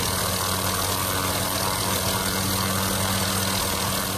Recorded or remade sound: recorded